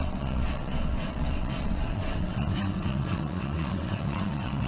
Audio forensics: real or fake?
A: fake